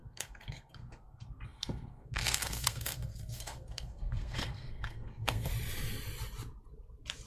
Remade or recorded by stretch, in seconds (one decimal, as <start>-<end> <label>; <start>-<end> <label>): 0.0-5.5 remade; 5.5-7.3 recorded